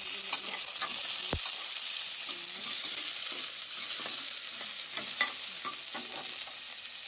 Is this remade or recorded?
recorded